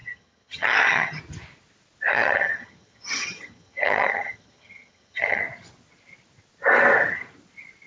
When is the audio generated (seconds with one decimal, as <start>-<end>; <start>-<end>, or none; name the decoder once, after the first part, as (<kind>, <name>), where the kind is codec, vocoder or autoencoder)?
0.0-1.2 (vocoder, HiFi-GAN); 2.1-5.4